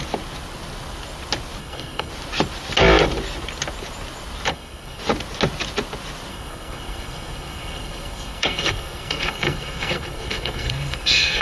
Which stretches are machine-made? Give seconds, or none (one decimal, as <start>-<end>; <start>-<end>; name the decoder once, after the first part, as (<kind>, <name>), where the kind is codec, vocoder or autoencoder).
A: 1.6-2.1 (codec, SNAC); 4.5-5.0; 6.3-11.4